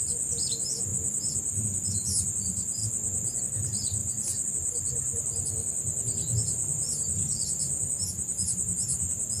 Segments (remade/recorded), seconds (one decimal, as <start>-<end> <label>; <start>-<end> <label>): 0.0-9.4 recorded